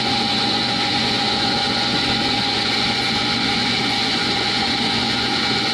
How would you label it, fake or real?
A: fake